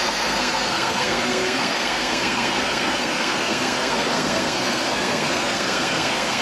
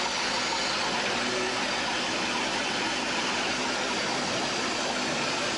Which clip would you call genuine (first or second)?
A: second